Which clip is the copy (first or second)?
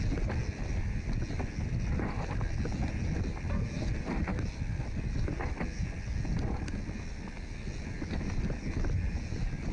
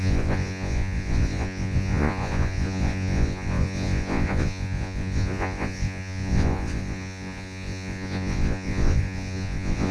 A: second